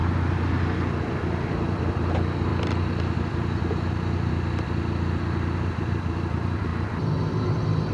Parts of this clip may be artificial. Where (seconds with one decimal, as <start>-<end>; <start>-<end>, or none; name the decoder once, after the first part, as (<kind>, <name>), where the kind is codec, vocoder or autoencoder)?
none